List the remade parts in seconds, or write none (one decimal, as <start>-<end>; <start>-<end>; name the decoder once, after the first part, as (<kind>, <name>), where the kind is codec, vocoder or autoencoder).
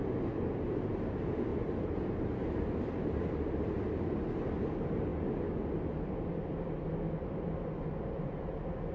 none